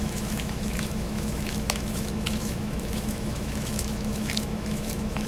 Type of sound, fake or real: fake